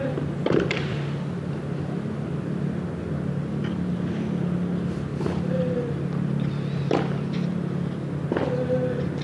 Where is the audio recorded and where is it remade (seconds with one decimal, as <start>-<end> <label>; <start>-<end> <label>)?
0.0-9.2 recorded